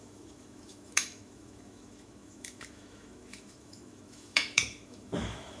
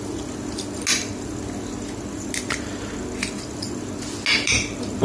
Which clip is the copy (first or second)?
first